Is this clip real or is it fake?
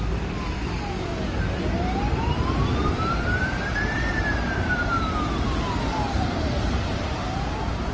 fake